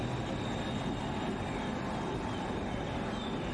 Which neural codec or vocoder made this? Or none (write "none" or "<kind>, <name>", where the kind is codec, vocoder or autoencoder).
none